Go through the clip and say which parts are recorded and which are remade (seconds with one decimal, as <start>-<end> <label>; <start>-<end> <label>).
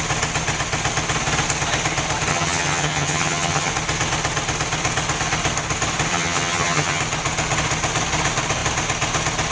0.0-2.3 recorded; 2.3-3.7 remade; 3.7-6.1 recorded; 6.1-7.0 remade; 7.0-9.5 recorded